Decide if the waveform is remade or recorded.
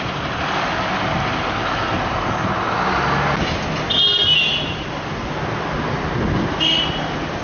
recorded